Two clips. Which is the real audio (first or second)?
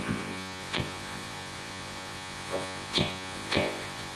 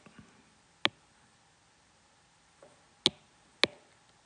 second